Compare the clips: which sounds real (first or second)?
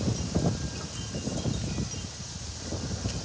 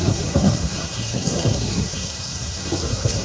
first